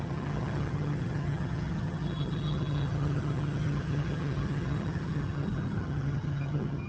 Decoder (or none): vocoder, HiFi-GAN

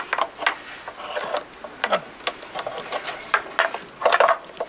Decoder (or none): none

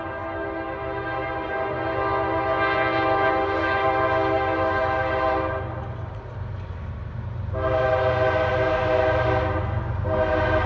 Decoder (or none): none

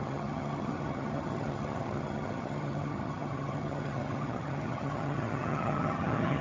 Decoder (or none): vocoder, HiFi-GAN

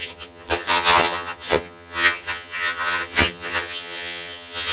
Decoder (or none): vocoder, HiFi-GAN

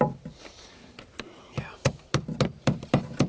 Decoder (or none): none